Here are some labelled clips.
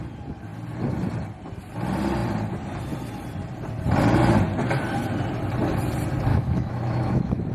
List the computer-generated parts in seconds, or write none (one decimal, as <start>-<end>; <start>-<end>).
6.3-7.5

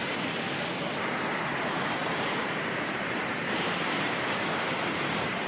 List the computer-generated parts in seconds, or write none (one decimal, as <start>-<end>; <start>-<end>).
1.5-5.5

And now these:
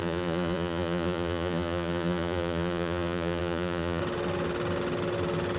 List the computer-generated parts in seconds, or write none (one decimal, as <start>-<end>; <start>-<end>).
0.0-4.0

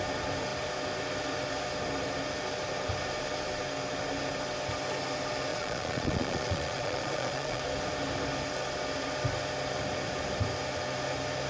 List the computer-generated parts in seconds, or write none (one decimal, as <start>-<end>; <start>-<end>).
5.5-7.6

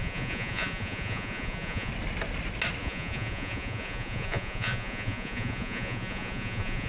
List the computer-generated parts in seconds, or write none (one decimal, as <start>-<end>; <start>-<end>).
0.0-1.9; 2.8-6.9